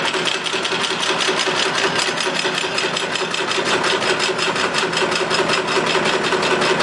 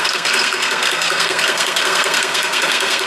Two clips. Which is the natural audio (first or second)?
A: first